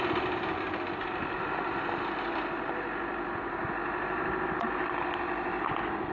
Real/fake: real